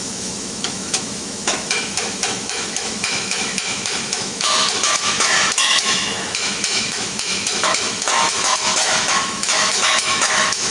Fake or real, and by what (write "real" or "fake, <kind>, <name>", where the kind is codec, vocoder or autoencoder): fake, autoencoder, DAC-VAE